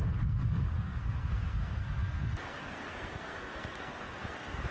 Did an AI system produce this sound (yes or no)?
yes